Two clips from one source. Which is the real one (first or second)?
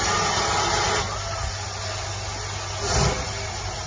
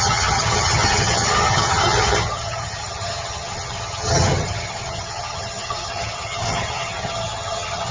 first